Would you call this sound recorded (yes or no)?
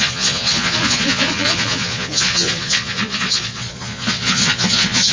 no